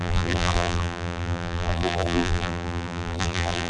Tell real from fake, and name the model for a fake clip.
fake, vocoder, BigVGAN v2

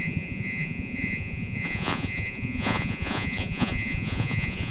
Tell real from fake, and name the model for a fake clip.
fake, vocoder, Vocos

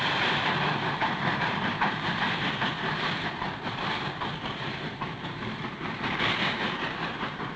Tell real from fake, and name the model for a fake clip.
fake, vocoder, BigVGAN v2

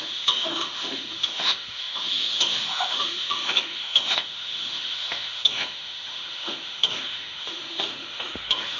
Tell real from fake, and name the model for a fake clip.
fake, autoencoder, DAC-VAE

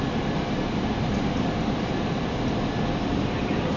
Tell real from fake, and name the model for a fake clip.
real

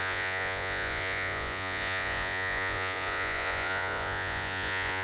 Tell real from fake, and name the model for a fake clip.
fake, vocoder, Vocos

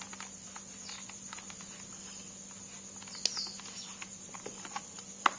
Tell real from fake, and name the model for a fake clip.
real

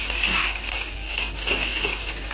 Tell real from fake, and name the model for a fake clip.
fake, codec, DAC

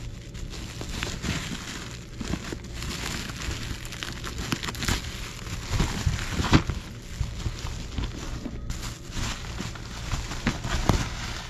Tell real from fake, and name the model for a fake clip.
real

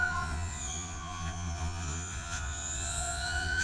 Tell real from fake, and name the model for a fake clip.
fake, vocoder, Vocos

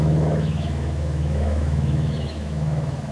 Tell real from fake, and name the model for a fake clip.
fake, autoencoder, DAC-VAE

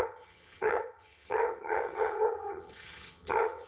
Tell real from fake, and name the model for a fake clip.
fake, vocoder, HiFi-GAN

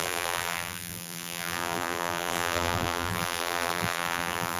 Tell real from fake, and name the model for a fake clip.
fake, vocoder, BigVGAN v2